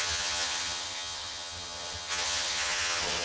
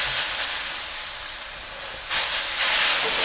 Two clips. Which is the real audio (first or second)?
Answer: second